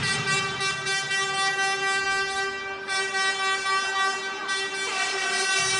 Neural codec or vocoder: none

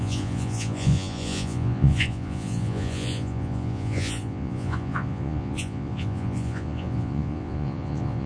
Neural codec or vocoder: vocoder, Vocos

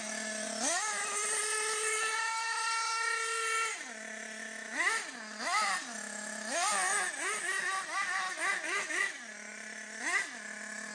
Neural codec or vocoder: none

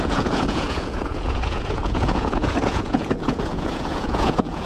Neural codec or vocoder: vocoder, Vocos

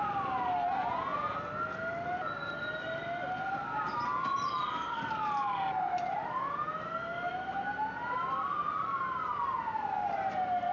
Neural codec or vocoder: none